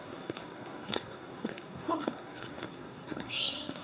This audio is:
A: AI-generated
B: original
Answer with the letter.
A